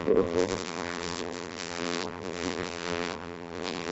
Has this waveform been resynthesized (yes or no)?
yes